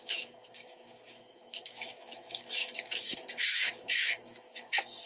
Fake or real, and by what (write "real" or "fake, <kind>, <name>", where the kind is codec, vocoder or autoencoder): fake, autoencoder, DAC-VAE